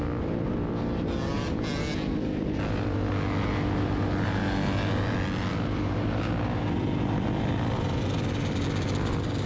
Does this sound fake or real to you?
real